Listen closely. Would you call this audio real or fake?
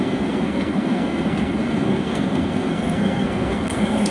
fake